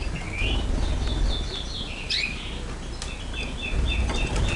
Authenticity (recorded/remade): recorded